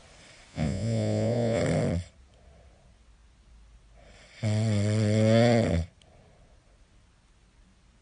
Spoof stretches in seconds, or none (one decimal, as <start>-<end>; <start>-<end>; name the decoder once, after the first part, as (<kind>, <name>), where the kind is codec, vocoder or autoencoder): 0.5-1.6 (vocoder, Vocos)